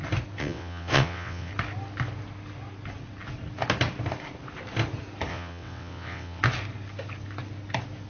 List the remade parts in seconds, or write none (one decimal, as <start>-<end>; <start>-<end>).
0.4-1.5; 5.3-6.4